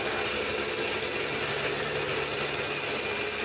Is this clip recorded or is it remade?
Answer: recorded